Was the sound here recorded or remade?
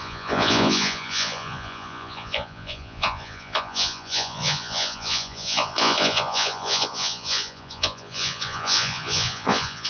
remade